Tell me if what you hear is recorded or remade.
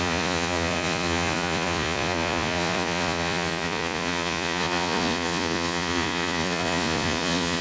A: remade